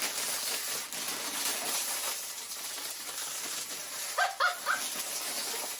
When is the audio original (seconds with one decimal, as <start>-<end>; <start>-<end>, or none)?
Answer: 0.0-1.5; 4.4-5.8